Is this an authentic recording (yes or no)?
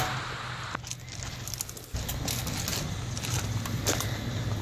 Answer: yes